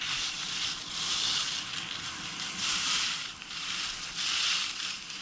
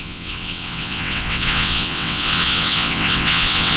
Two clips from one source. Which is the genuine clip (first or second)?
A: first